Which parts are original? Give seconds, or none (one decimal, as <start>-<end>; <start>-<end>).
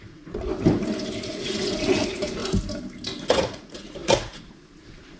0.5-1.2; 2.4-3.2